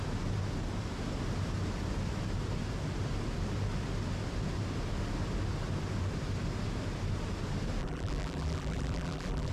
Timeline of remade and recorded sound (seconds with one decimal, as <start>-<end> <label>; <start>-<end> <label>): 0.0-7.8 recorded; 7.8-9.5 remade